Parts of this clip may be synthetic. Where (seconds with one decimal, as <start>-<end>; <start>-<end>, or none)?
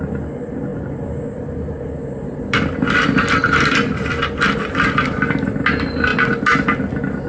0.7-4.1; 6.1-7.3